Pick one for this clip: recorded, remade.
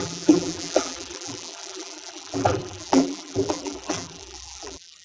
remade